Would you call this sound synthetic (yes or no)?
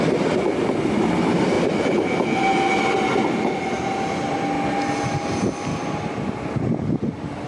no